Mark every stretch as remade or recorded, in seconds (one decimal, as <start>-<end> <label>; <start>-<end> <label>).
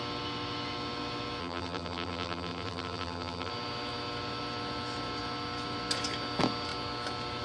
0.0-1.4 recorded; 1.4-3.5 remade; 3.5-7.4 recorded